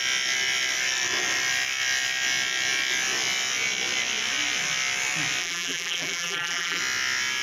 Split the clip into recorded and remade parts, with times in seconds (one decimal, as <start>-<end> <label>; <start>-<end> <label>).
0.0-5.4 recorded; 5.4-6.8 remade; 6.8-7.4 recorded